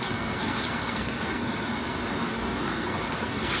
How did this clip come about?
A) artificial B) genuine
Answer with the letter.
A